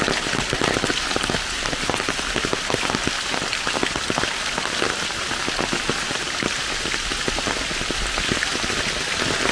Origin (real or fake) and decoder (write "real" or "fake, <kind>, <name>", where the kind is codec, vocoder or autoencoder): real